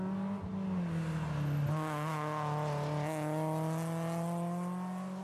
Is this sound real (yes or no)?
yes